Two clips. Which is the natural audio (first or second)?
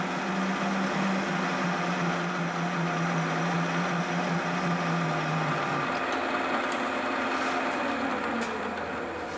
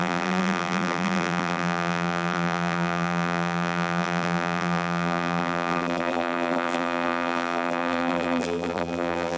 first